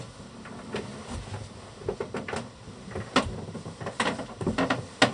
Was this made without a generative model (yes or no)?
yes